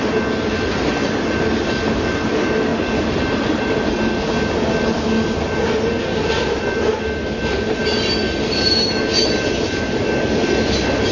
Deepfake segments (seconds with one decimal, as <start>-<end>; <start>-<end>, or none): none